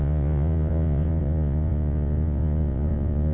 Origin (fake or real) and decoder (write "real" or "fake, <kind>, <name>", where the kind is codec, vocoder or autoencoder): fake, vocoder, Vocos